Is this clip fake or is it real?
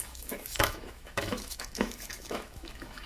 fake